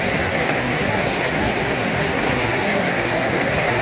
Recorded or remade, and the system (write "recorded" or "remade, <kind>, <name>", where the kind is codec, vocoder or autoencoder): remade, codec, SNAC